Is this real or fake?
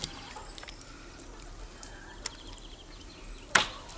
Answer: real